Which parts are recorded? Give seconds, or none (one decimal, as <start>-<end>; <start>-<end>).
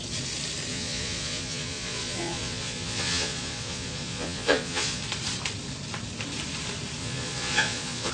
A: 0.0-0.7; 5.0-7.0